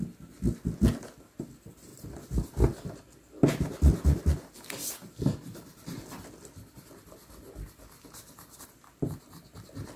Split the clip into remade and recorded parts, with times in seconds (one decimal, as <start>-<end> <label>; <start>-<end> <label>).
0.0-10.0 recorded